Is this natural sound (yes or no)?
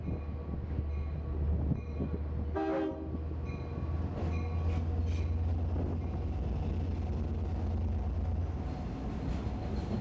yes